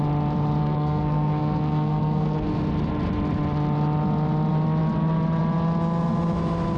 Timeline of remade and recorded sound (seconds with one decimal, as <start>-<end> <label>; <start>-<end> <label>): 0.0-0.6 recorded; 0.6-2.5 remade; 2.5-6.8 recorded